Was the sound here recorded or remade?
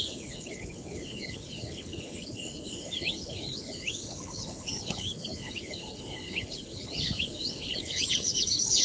remade